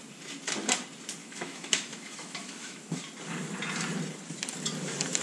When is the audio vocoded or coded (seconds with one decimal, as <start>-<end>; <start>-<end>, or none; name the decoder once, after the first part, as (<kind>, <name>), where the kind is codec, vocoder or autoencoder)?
1.2-3.0 (autoencoder, DAC-VAE)